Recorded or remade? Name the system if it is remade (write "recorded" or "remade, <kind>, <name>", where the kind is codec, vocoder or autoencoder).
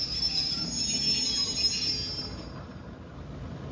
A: recorded